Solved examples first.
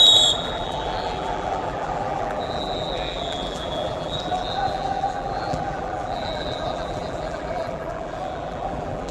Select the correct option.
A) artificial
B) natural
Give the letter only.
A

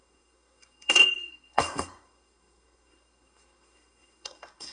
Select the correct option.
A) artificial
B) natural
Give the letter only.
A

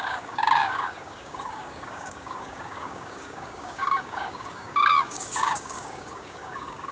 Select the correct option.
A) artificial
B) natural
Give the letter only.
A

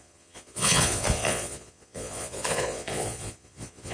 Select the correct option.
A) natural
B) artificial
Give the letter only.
B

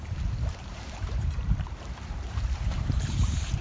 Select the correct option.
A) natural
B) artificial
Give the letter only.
B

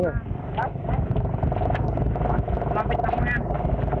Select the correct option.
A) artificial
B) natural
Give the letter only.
B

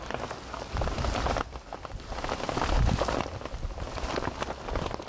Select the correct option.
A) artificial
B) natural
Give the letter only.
B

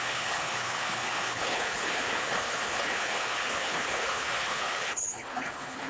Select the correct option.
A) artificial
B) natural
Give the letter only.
A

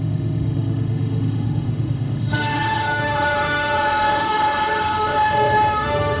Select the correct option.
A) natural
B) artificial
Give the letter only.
B